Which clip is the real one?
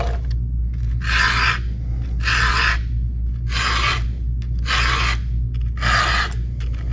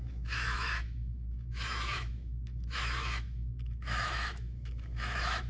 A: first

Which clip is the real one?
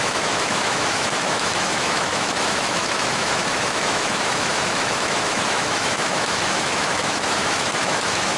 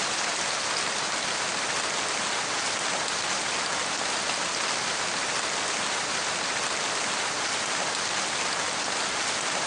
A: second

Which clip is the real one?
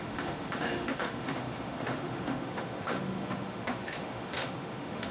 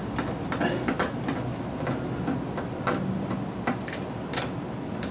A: second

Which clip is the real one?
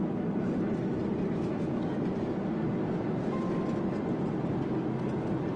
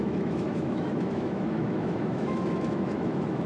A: first